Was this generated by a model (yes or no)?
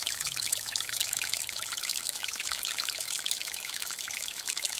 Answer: yes